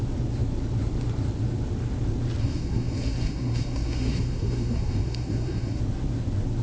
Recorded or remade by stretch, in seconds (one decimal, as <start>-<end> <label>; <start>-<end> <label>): 0.0-2.4 recorded; 2.4-5.8 remade; 5.8-6.6 recorded